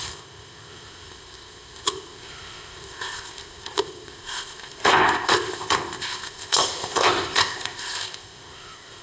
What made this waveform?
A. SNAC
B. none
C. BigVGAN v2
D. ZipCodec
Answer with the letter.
D